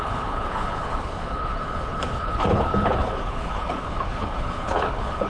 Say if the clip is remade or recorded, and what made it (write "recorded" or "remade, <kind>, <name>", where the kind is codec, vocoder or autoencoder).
remade, codec, HILCodec